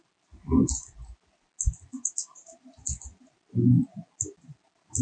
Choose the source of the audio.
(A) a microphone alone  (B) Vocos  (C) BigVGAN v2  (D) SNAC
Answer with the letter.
A